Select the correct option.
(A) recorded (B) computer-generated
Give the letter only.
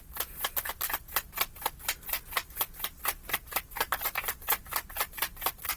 A